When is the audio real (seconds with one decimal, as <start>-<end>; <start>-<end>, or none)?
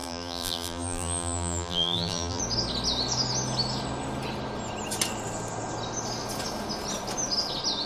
2.4-7.9